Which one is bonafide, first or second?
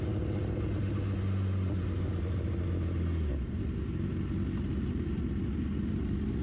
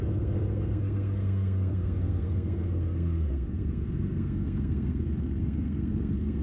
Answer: first